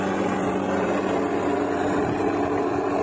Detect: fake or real real